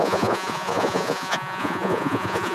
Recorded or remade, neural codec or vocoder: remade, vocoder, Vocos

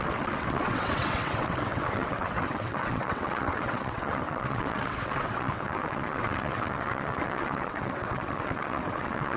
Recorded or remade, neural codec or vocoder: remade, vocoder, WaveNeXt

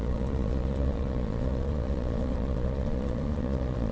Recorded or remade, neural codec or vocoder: remade, vocoder, Vocos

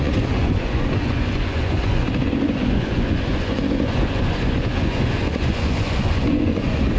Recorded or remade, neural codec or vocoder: remade, vocoder, Vocos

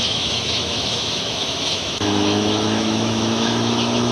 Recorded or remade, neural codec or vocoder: remade, autoencoder, DAC-VAE